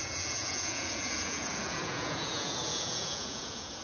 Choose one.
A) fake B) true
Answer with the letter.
A